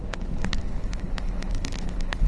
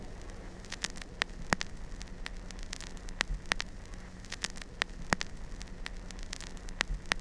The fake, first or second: first